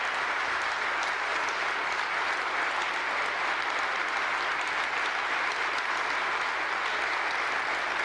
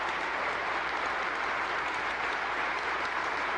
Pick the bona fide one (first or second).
first